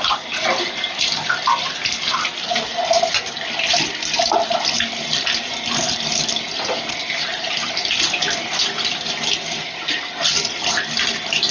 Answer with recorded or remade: recorded